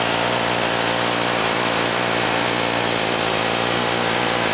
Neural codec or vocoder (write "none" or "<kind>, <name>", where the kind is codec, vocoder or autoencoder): none